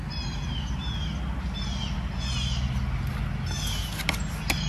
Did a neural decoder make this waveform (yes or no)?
no